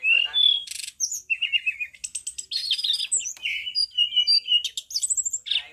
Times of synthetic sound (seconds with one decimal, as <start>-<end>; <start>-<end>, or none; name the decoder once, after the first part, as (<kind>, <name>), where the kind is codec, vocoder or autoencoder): none